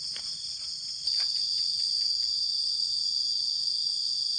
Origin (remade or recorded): remade